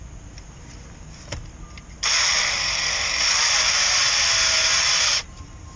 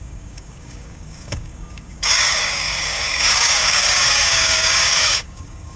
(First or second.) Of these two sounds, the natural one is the first